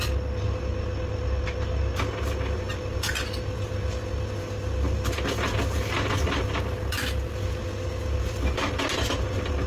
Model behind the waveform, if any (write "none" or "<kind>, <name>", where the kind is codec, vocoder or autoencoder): none